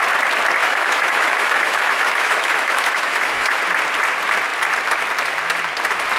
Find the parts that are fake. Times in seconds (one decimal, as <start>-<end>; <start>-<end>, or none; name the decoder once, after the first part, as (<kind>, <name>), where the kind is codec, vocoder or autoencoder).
0.6-3.6 (autoencoder, DAC-VAE)